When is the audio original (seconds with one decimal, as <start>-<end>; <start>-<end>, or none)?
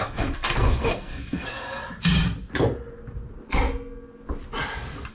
1.8-5.1